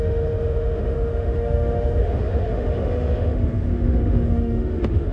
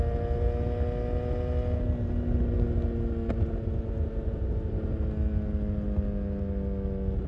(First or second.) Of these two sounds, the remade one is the first